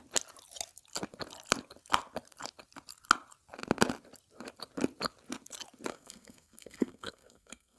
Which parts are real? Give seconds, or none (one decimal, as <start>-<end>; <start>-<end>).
0.0-5.9